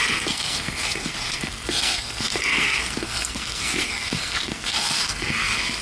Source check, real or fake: fake